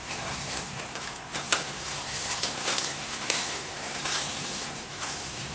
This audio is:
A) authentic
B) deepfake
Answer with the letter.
B